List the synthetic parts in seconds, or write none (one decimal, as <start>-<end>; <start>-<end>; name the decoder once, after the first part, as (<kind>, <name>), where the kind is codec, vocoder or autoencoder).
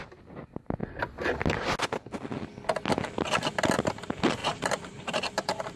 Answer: 4.4-5.8 (vocoder, BigVGAN v2)